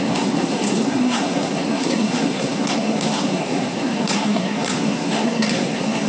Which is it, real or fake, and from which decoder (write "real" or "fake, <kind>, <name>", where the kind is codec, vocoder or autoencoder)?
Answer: fake, codec, SNAC